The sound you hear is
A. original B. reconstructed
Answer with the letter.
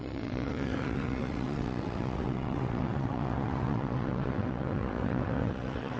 B